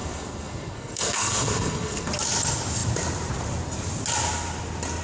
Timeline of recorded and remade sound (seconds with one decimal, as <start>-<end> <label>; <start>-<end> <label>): 0.0-2.1 remade; 2.1-5.0 recorded